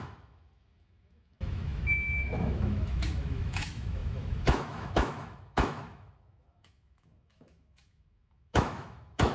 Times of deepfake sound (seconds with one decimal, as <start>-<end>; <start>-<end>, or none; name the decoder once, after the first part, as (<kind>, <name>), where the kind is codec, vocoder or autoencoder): 0.0-9.3 (autoencoder, DAC-VAE)